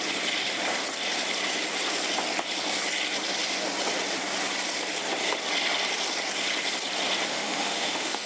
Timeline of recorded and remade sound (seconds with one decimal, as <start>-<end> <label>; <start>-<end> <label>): 0.0-7.3 recorded; 7.3-8.3 remade